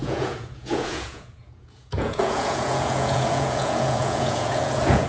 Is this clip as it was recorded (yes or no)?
no